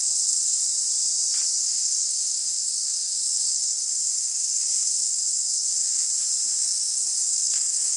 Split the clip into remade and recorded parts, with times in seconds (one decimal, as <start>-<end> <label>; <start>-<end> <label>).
0.0-0.6 remade; 0.6-1.6 recorded; 1.6-6.1 remade; 6.1-6.6 recorded; 6.6-8.0 remade